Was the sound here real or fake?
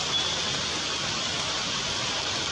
real